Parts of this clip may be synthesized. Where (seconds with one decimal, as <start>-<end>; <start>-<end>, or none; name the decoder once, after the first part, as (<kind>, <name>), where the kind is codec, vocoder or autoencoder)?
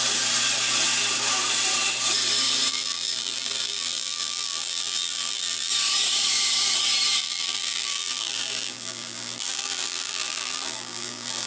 2.7-5.7 (vocoder, BigVGAN v2); 7.2-11.5